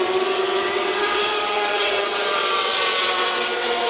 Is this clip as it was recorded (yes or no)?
no